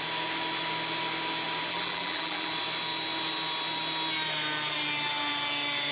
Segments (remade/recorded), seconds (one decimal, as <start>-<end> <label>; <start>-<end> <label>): 0.0-1.7 recorded; 1.7-2.5 remade; 2.5-5.9 recorded